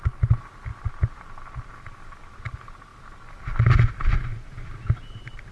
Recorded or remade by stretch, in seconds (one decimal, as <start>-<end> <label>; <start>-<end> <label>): 0.0-5.5 recorded